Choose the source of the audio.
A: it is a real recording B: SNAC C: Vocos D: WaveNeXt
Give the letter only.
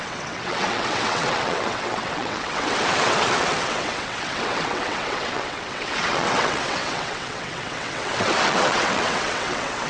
D